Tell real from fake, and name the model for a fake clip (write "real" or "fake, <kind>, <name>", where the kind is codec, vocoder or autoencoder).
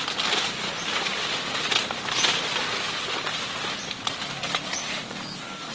real